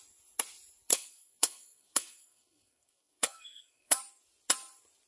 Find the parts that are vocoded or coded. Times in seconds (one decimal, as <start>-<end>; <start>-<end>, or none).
0.9-4.0